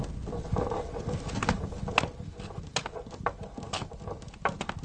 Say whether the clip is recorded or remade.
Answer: recorded